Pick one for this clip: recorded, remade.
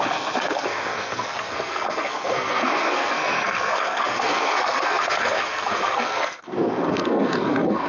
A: remade